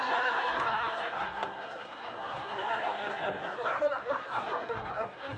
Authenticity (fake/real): fake